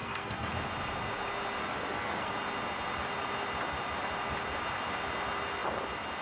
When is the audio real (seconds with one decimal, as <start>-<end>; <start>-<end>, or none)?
0.5-1.6; 2.3-6.2